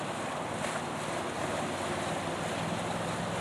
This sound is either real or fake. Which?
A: real